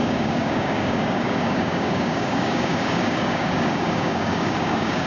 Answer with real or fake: fake